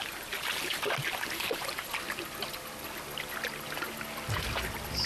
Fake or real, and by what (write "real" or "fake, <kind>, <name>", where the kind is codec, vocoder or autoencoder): real